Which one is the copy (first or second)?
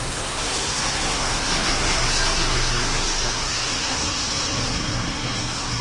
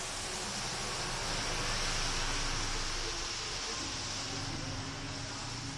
first